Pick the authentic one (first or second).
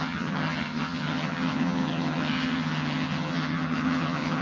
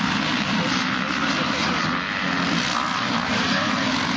second